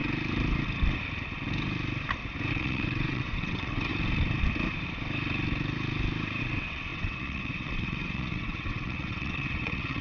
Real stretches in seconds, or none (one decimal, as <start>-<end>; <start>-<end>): 0.0-2.5; 3.9-6.4